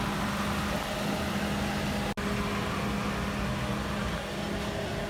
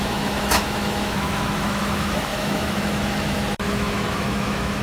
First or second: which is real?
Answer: first